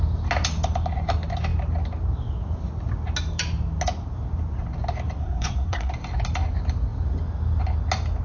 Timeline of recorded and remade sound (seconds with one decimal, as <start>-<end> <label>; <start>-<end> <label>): 0.0-5.2 recorded; 5.2-5.9 remade; 5.9-8.2 recorded